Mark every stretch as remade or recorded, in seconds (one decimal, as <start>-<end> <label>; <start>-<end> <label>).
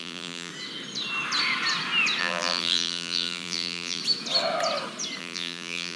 0.0-0.5 remade; 0.5-2.2 recorded; 2.2-4.0 remade; 4.0-5.2 recorded; 5.2-6.0 remade